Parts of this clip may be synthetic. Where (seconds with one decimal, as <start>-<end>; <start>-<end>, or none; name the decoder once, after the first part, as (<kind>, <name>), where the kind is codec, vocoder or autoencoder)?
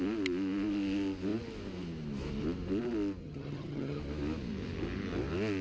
3.2-4.0 (vocoder, HiFi-GAN)